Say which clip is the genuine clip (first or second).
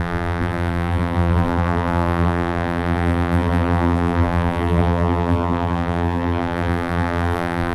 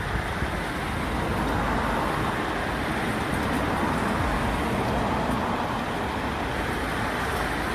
second